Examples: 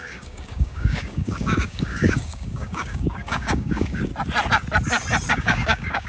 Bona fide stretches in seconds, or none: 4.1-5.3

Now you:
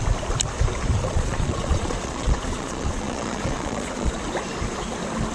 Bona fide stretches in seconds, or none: 0.0-1.0; 4.2-5.3

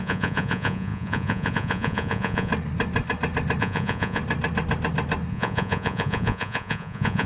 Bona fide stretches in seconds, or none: 2.5-3.6; 4.2-5.3